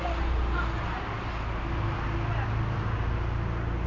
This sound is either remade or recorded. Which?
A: recorded